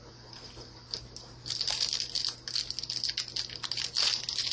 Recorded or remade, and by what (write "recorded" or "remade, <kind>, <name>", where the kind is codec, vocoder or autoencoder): recorded